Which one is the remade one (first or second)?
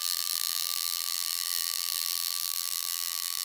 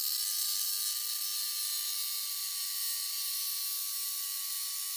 first